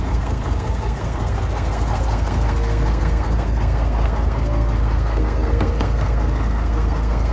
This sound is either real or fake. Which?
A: fake